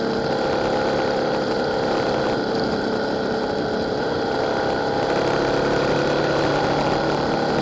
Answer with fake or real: real